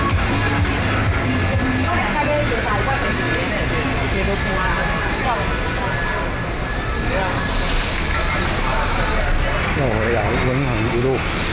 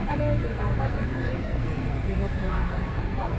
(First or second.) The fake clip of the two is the second